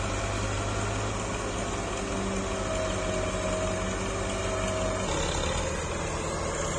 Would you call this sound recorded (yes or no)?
yes